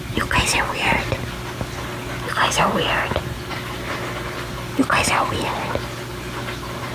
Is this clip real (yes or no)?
yes